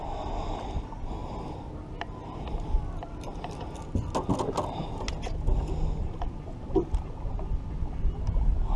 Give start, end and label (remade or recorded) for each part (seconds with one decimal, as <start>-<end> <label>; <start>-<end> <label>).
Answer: 0.0-8.8 recorded